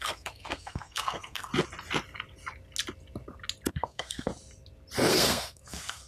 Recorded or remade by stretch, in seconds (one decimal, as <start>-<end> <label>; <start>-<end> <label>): 0.0-1.5 remade; 1.5-3.7 recorded; 3.7-4.3 remade; 4.3-5.1 recorded; 5.1-6.1 remade